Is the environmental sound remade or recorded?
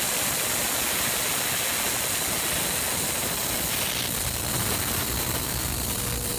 recorded